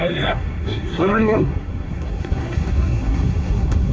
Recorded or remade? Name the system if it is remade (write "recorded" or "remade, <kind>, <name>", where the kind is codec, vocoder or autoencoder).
remade, codec, SNAC